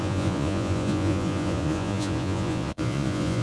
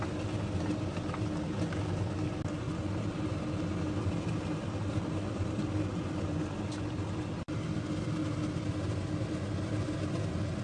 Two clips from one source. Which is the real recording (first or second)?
second